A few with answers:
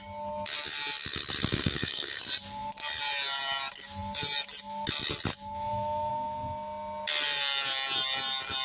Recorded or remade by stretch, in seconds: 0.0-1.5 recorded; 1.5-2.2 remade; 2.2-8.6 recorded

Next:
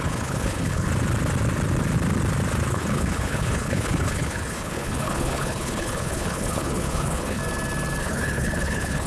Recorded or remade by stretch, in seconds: 0.0-0.9 remade; 0.9-2.7 recorded; 2.7-7.4 remade; 7.4-8.0 recorded; 8.0-9.1 remade

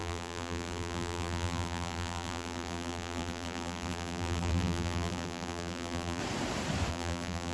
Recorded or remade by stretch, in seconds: 0.0-6.2 remade; 6.2-6.9 recorded; 6.9-7.5 remade

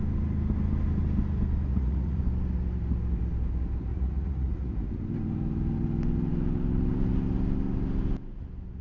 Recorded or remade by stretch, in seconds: 0.0-1.7 recorded; 1.7-2.2 remade; 2.2-3.9 recorded; 3.9-4.7 remade; 4.7-8.8 recorded

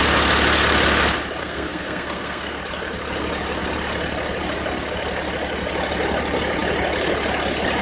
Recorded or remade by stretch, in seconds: 0.0-1.4 recorded; 1.4-2.6 remade; 2.6-7.8 recorded

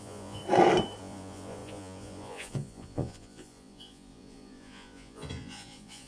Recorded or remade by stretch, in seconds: 0.0-0.4 remade; 0.4-1.0 recorded; 1.0-6.1 remade

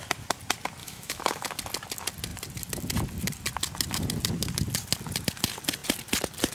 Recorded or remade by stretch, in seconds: 0.0-0.8 recorded; 0.8-1.5 remade; 1.5-6.5 recorded